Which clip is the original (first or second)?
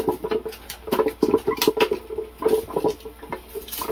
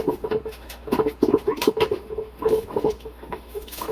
first